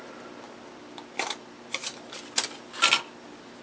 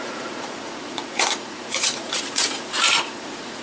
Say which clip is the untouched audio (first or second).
first